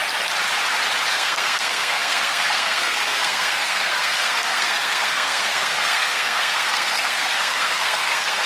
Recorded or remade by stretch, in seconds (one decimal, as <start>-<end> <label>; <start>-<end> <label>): 0.0-1.1 recorded; 1.1-8.5 remade